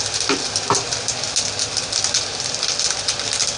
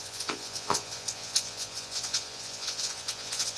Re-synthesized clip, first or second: second